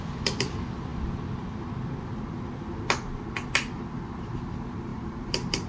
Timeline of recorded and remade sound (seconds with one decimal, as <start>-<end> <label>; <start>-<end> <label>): 0.0-4.9 recorded; 4.9-5.7 remade